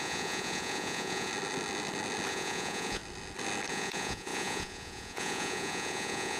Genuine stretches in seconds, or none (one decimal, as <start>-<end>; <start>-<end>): 1.3-2.3; 3.0-3.7